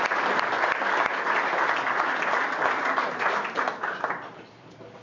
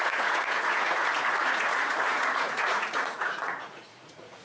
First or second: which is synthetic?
second